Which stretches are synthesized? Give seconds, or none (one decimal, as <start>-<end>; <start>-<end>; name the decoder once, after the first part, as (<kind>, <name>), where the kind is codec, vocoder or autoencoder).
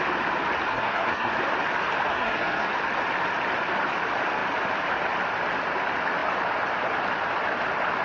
0.7-1.3 (codec, SNAC); 2.1-2.7